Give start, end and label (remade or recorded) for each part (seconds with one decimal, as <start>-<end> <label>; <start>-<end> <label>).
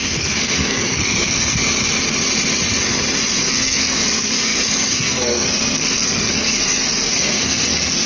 0.0-1.6 remade; 1.6-3.4 recorded; 3.4-8.1 remade